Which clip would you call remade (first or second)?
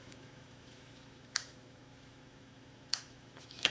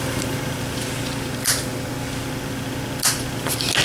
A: first